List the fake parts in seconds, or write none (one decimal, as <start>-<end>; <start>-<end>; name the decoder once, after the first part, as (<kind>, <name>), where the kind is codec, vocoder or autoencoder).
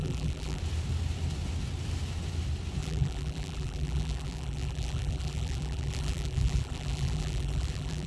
0.0-0.6 (vocoder, BigVGAN v2); 2.8-8.1